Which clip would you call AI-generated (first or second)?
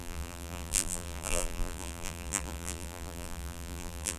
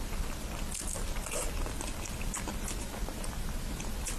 first